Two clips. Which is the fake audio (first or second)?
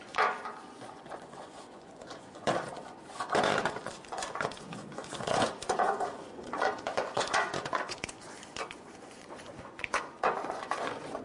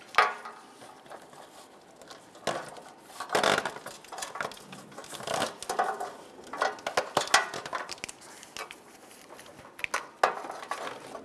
first